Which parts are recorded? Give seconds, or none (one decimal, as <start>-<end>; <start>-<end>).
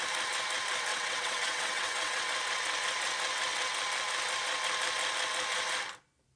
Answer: 0.0-0.9; 2.2-6.4